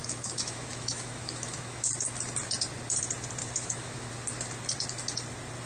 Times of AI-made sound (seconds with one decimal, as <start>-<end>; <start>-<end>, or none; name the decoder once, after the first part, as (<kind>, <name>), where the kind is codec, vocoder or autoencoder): 0.0-1.9 (autoencoder, DAC-VAE); 3.4-4.1